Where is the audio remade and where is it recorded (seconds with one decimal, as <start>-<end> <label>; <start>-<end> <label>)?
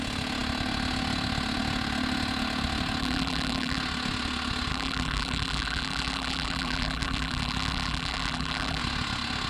0.0-3.0 recorded; 3.0-3.8 remade; 3.8-4.7 recorded; 4.7-8.8 remade; 8.8-9.5 recorded